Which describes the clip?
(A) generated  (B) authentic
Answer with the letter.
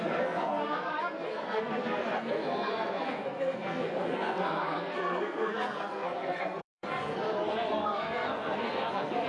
A